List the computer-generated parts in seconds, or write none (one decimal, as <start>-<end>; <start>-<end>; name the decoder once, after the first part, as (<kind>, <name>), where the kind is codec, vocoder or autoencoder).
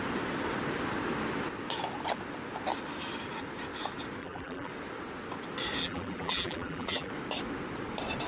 4.2-4.7 (vocoder, BigVGAN v2); 5.8-7.1